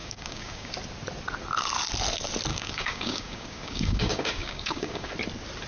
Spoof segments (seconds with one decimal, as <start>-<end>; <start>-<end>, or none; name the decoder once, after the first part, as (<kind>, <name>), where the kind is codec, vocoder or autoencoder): 0.0-0.7 (codec, DAC); 2.5-5.1